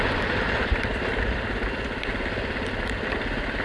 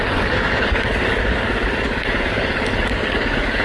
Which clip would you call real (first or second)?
first